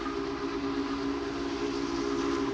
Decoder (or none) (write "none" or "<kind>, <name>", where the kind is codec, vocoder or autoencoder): none